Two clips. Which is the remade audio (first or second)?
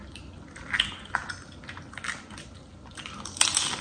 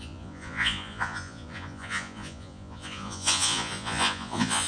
second